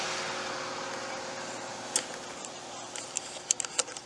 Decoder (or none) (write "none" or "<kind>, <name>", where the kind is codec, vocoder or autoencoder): none